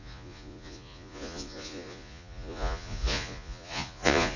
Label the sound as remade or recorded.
remade